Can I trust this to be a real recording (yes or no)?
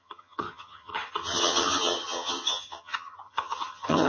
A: no